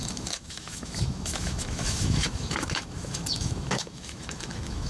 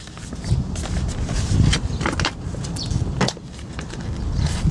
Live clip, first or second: second